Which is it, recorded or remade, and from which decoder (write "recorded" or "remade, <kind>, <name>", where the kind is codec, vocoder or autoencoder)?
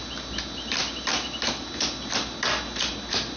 recorded